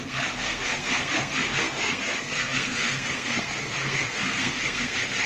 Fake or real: fake